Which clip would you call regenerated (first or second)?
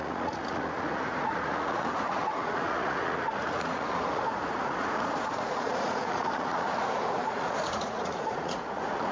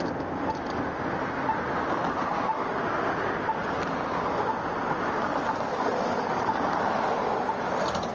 first